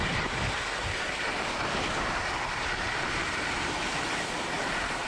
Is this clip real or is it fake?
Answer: real